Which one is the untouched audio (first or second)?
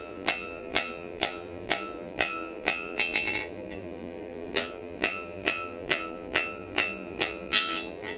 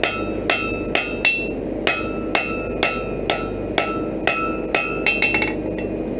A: second